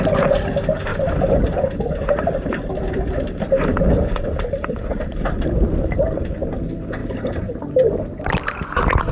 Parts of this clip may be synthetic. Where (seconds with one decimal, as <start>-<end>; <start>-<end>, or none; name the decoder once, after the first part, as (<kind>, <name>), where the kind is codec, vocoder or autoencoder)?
0.9-1.6 (vocoder, BigVGAN v2); 3.7-6.2; 7.0-7.5